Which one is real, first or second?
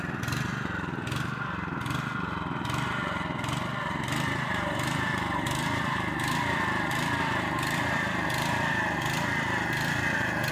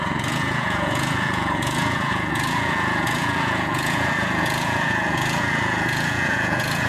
first